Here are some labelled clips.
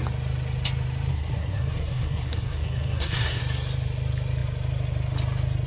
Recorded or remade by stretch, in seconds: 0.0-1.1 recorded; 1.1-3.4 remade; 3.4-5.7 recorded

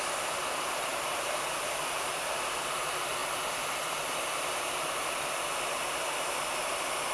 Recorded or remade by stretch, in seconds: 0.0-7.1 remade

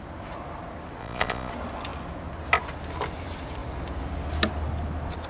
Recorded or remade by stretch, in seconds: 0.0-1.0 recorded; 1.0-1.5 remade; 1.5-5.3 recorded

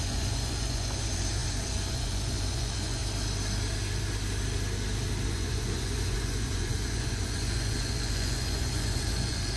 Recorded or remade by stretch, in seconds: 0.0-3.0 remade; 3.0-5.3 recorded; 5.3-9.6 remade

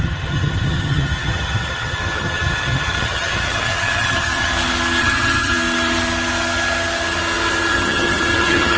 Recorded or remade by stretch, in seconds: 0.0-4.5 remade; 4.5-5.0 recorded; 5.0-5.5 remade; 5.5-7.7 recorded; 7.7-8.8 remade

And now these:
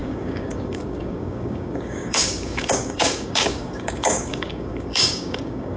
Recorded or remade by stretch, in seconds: 0.0-5.8 remade